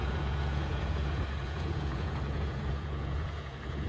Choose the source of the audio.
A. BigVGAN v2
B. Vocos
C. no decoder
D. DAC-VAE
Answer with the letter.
B